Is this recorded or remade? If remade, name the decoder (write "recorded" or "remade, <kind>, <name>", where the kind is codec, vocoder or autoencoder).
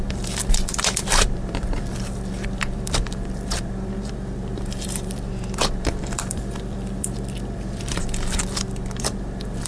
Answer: remade, vocoder, BigVGAN v2